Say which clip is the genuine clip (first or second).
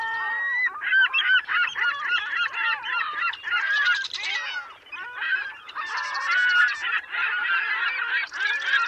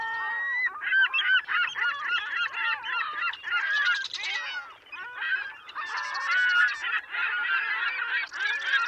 second